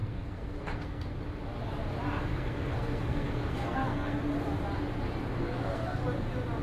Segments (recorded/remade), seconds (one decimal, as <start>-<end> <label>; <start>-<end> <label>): 0.0-1.2 remade; 1.2-2.3 recorded; 2.3-4.2 remade; 4.2-5.4 recorded; 5.4-6.0 remade; 6.0-6.6 recorded